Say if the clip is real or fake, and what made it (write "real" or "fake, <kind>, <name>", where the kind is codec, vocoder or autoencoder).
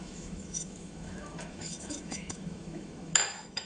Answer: fake, autoencoder, DAC-VAE